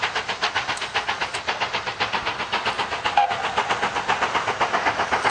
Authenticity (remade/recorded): recorded